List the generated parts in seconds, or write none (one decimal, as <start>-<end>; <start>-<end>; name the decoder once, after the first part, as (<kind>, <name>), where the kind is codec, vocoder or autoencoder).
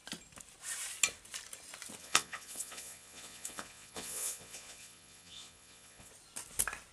2.0-6.1 (vocoder, Vocos)